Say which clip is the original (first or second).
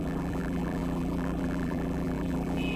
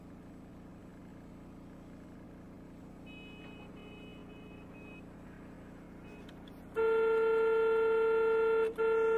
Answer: second